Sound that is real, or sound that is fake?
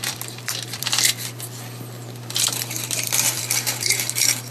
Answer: fake